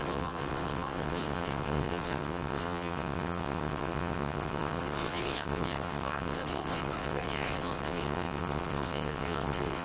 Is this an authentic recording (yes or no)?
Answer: no